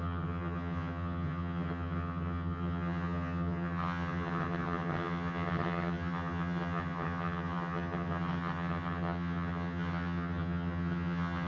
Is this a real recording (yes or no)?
no